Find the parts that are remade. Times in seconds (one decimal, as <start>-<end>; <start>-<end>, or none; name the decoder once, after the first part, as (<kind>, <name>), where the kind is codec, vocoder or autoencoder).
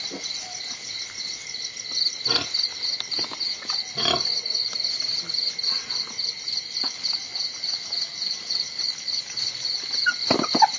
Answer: 0.0-7.3 (vocoder, BigVGAN v2); 9.6-10.8